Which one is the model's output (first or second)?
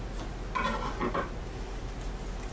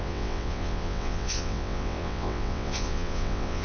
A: second